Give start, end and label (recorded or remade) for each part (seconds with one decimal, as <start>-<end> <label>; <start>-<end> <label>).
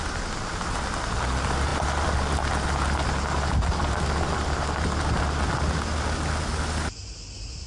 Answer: 0.0-7.7 recorded